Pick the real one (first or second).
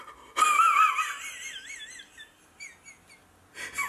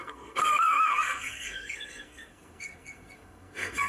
first